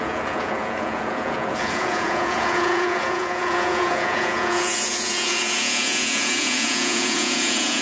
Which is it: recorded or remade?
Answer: remade